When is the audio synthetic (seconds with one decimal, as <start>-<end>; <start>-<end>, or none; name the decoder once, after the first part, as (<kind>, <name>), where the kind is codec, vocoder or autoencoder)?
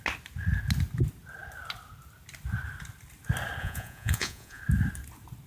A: 3.6-4.6 (vocoder, Vocos)